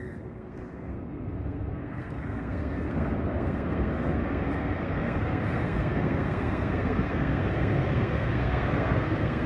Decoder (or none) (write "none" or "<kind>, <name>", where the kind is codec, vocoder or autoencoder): codec, SNAC